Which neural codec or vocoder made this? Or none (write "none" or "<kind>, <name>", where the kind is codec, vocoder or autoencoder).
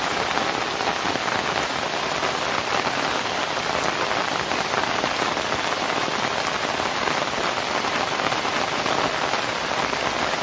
none